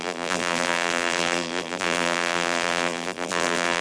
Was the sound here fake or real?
fake